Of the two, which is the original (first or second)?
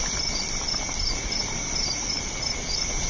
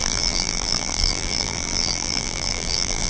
first